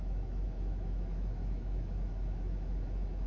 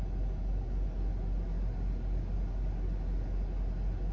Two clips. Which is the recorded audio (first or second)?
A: second